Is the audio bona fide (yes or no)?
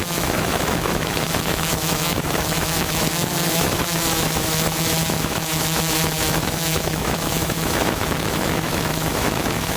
no